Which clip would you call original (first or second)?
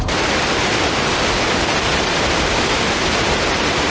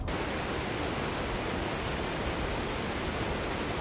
second